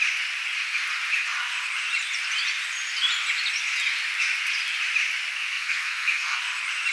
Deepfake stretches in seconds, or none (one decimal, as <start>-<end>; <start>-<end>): 5.3-6.4